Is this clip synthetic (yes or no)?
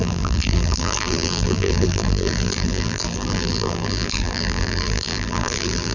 yes